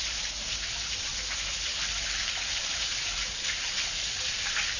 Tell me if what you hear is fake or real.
fake